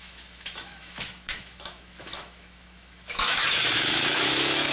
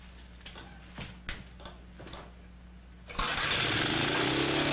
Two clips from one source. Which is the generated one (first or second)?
first